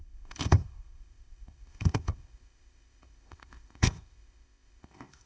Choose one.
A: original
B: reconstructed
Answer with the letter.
B